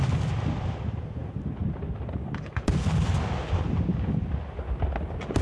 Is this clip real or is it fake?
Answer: real